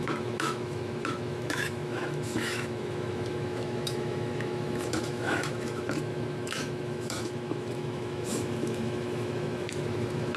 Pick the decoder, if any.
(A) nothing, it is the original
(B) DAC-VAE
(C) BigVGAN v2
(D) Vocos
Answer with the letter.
B